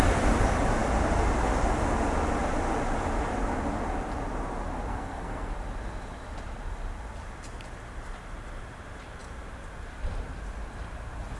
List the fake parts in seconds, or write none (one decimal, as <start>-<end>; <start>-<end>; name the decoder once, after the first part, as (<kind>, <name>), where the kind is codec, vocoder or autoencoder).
4.9-5.5 (codec, SNAC)